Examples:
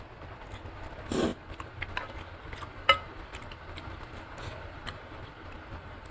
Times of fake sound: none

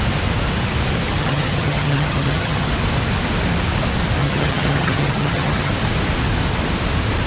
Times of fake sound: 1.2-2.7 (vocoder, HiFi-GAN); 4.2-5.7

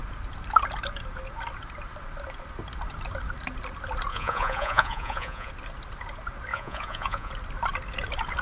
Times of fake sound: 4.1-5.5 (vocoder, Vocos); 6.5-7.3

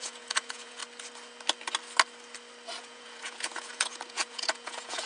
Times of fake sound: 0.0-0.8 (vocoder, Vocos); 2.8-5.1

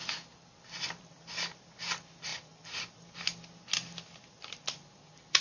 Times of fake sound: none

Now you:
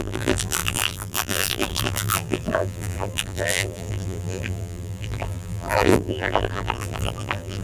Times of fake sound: 0.0-7.6 (vocoder, BigVGAN v2)